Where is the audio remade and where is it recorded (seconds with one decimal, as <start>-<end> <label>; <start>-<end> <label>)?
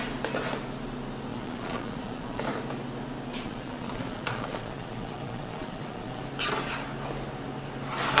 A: 0.0-1.3 recorded; 1.3-2.4 remade; 2.4-3.3 recorded; 3.3-6.2 remade; 6.2-8.2 recorded